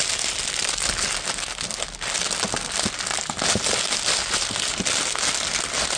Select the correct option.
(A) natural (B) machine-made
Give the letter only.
A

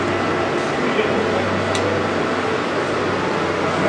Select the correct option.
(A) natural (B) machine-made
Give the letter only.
A